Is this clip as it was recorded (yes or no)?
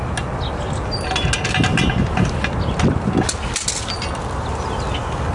yes